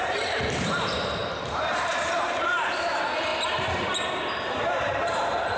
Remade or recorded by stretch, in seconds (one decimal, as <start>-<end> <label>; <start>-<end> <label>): 0.0-5.6 remade